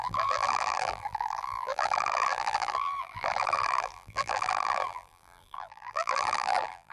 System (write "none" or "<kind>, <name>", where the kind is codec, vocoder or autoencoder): vocoder, BigVGAN v2